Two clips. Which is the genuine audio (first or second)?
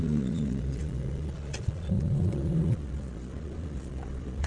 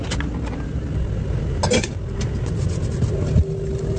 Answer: second